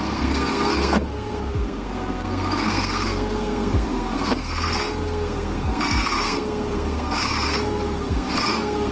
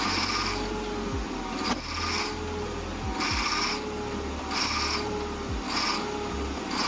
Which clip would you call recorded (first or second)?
second